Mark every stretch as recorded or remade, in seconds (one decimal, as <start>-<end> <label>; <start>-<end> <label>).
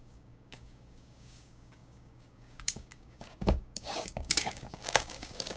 0.0-5.6 remade